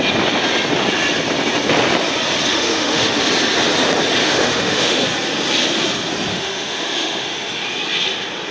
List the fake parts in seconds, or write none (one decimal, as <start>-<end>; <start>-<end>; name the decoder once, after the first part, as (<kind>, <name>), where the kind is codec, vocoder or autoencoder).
2.5-3.1 (autoencoder, DAC-VAE); 4.2-5.0; 6.3-7.6